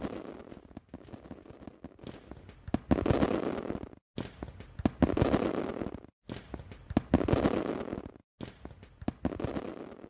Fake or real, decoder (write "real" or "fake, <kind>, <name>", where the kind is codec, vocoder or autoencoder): real